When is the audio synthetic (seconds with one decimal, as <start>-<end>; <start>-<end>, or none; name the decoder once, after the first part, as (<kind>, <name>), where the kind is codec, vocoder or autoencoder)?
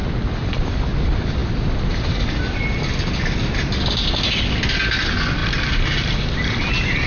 none